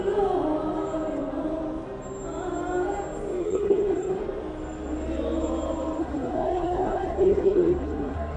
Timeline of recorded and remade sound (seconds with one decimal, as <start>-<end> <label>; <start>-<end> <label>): 0.0-3.4 recorded; 3.4-4.2 remade; 4.2-6.0 recorded; 6.0-8.4 remade